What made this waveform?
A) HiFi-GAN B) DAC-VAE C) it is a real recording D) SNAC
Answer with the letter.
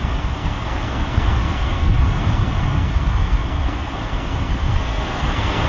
D